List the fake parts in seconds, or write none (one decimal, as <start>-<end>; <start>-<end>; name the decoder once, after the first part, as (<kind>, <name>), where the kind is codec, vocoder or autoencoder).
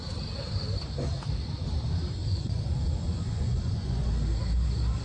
2.2-4.1 (vocoder, Vocos)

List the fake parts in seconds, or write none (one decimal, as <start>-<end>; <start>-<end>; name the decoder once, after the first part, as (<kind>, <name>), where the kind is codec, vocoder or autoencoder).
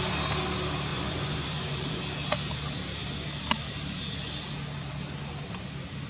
0.9-2.0 (vocoder, Vocos)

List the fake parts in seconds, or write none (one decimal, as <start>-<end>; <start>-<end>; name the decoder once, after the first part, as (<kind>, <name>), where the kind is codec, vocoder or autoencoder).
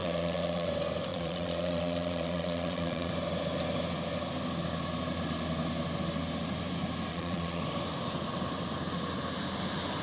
0.0-0.7 (vocoder, Vocos); 1.1-3.1; 7.1-7.6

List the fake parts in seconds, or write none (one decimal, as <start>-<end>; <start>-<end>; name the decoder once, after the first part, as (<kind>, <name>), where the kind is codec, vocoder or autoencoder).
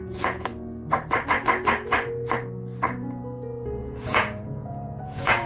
0.0-0.5 (vocoder, Vocos); 3.8-5.5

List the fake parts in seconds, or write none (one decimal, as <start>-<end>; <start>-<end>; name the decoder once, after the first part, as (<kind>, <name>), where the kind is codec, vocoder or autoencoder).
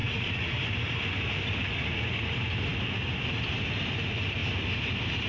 0.0-0.6 (vocoder, Vocos)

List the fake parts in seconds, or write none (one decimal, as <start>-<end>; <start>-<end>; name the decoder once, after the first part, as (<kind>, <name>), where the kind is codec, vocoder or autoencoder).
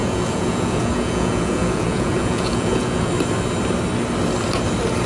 0.0-3.1 (vocoder, Vocos)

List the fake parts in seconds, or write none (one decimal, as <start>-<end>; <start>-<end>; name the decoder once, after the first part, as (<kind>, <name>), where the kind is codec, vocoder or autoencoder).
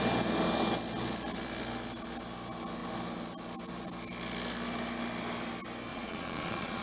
5.9-6.8 (vocoder, Vocos)